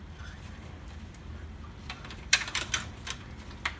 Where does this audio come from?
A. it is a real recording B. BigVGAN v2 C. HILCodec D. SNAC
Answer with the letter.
B